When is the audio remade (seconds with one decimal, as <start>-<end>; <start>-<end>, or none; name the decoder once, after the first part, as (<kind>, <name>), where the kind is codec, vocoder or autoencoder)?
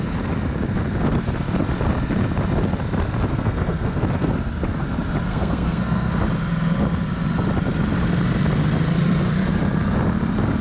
3.3-4.3 (codec, SNAC); 5.3-6.1